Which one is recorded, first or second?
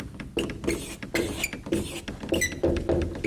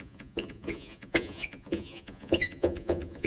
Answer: first